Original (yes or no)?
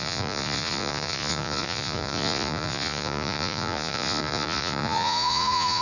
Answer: no